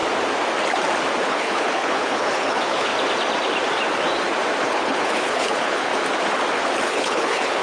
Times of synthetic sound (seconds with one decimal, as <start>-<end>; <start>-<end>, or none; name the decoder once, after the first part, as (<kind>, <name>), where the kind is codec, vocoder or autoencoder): 1.2-2.9 (codec, HILCodec); 4.6-5.9; 6.8-7.6